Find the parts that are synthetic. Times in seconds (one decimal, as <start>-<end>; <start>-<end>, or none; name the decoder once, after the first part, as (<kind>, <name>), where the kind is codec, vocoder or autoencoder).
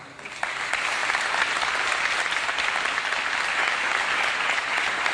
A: none